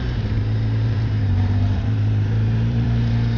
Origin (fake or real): fake